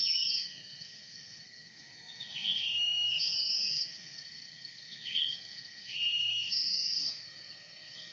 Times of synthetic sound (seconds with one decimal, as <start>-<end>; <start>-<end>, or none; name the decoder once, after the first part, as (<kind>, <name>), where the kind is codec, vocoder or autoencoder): 0.0-8.1 (codec, SNAC)